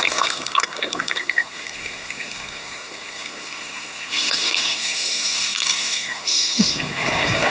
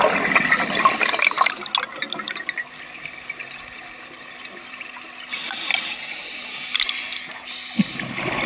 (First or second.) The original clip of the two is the second